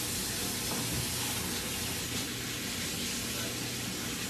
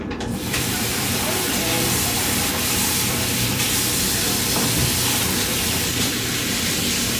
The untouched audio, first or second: first